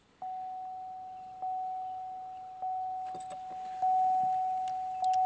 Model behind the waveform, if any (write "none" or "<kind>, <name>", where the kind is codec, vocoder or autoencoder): none